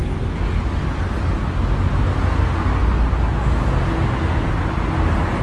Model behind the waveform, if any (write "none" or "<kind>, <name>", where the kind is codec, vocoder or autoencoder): none